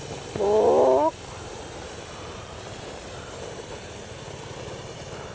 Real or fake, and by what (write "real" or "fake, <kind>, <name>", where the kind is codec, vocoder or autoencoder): real